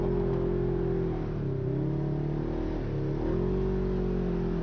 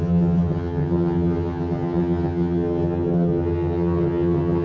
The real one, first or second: first